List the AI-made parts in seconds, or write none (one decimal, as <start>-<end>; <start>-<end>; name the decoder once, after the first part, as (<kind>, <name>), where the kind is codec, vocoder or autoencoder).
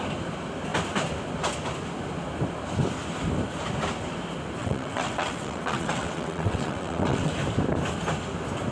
4.6-7.3 (vocoder, WaveNeXt)